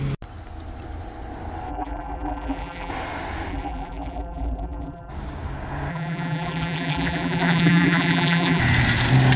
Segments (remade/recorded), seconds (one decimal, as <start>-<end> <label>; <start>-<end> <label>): 0.0-1.7 recorded; 1.7-2.9 remade; 2.9-3.5 recorded; 3.5-5.1 remade; 5.1-5.9 recorded; 5.9-8.6 remade; 8.6-9.4 recorded